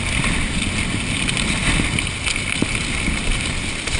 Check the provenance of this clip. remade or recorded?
recorded